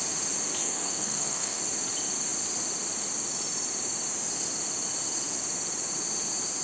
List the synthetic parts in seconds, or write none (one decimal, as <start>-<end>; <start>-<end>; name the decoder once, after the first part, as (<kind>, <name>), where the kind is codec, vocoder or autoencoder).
0.6-1.6 (codec, SNAC)